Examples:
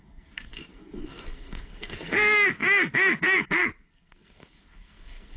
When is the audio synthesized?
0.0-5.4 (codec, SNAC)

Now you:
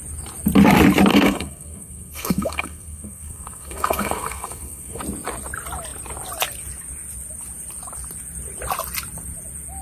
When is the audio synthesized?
1.1-5.0 (codec, SNAC)